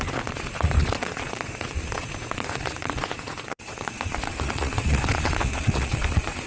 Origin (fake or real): fake